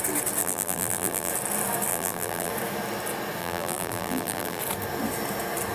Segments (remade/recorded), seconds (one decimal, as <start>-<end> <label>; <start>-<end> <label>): 0.0-0.4 recorded; 0.4-1.3 remade; 1.3-1.9 recorded; 1.9-2.5 remade; 2.5-3.4 recorded; 3.4-4.6 remade; 4.6-5.7 recorded